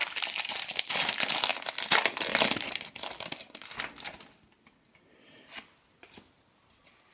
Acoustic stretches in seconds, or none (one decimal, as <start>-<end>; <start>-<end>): 0.0-7.1